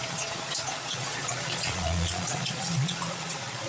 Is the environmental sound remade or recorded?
remade